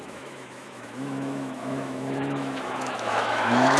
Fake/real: fake